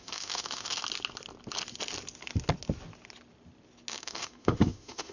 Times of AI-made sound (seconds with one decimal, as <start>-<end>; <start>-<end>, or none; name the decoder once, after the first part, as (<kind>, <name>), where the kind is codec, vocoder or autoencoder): 0.0-0.8 (autoencoder, DAC-VAE); 3.9-5.1